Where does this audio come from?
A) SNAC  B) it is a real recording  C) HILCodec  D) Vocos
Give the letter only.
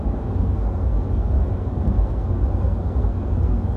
A